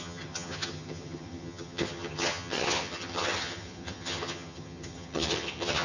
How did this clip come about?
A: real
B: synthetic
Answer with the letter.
B